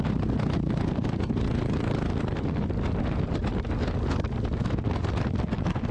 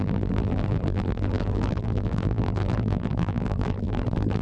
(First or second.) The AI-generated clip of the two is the second